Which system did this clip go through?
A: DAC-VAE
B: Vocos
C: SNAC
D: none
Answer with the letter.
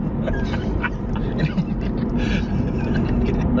D